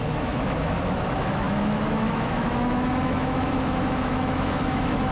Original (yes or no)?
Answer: no